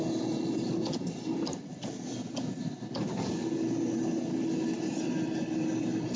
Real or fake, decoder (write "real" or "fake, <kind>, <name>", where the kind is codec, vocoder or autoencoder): real